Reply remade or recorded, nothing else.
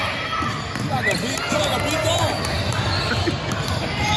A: recorded